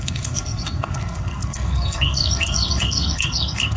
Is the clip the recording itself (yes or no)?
no